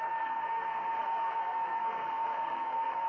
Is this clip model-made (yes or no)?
yes